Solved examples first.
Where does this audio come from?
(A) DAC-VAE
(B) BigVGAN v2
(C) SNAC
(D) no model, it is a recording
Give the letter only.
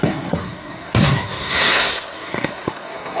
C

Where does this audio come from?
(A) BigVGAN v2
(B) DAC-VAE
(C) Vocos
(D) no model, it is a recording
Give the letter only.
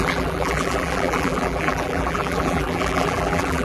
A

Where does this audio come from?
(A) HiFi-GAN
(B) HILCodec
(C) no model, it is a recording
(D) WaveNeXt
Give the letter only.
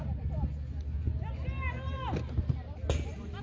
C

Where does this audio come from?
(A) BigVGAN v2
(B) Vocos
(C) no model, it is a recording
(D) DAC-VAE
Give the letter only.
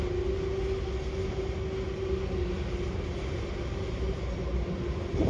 C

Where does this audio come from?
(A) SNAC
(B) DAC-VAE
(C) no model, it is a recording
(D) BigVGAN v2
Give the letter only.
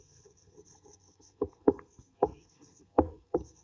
A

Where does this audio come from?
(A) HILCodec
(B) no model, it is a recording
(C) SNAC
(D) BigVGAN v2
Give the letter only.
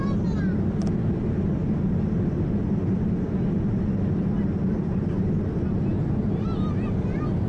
B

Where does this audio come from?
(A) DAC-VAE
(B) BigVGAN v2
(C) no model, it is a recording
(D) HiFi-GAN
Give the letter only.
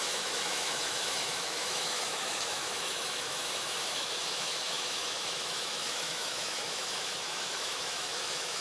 A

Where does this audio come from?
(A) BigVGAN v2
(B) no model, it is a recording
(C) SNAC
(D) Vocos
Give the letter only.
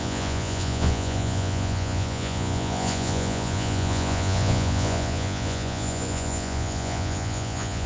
D